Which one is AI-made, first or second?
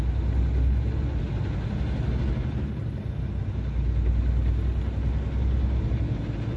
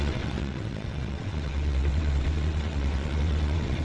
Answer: second